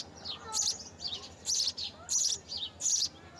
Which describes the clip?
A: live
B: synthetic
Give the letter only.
A